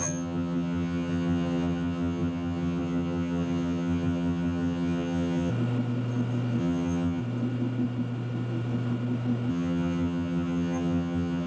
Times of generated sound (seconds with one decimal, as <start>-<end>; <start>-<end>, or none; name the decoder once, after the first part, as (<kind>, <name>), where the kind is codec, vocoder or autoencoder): 0.0-5.5 (vocoder, HiFi-GAN); 6.6-7.2; 9.5-11.5